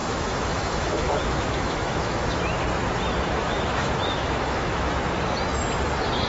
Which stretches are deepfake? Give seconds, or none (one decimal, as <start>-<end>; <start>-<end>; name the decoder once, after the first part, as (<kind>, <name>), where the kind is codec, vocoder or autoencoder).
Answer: 0.0-2.4 (autoencoder, DAC-VAE); 3.4-4.9